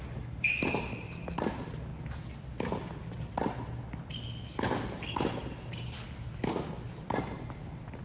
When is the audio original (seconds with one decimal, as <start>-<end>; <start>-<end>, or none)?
0.0-8.0